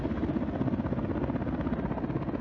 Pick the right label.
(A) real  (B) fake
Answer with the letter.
A